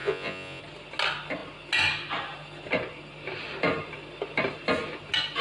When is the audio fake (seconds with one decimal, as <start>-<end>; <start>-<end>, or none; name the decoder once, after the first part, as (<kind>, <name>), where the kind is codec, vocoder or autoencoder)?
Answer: 0.0-0.6 (vocoder, Vocos)